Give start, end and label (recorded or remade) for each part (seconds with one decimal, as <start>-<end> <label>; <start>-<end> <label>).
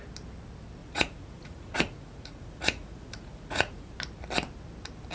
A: 0.0-0.8 recorded; 0.8-3.9 remade; 3.9-5.1 recorded